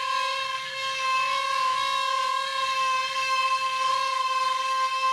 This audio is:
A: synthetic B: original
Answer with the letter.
A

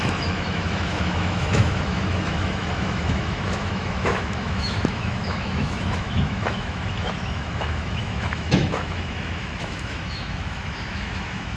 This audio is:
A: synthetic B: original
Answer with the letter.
A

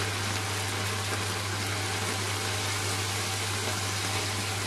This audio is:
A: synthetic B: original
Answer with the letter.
B